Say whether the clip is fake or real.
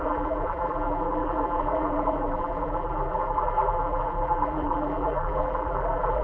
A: fake